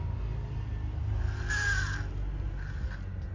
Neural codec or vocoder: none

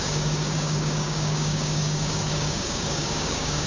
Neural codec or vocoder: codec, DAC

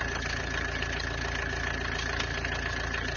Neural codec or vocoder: none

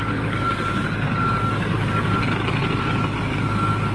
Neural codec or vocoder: codec, DAC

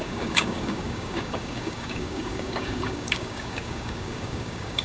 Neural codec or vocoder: codec, DAC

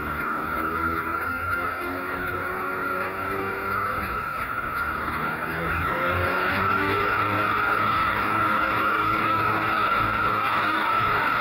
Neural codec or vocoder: codec, DAC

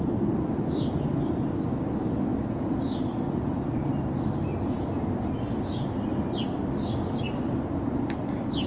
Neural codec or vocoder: none